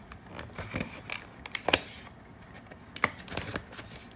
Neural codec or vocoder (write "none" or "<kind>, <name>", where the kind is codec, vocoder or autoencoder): none